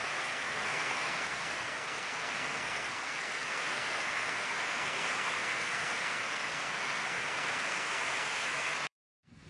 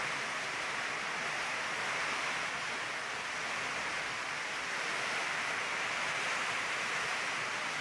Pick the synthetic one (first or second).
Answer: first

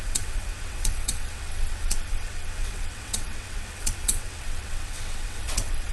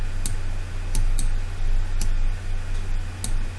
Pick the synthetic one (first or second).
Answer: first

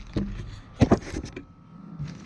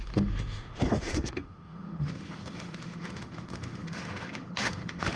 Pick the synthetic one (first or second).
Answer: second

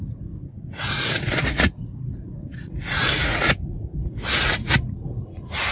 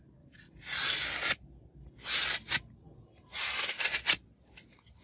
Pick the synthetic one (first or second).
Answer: first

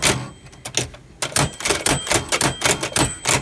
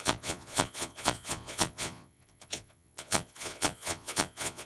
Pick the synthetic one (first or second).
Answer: second